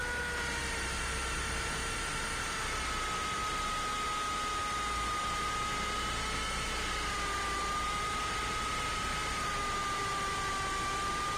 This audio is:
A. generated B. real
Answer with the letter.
B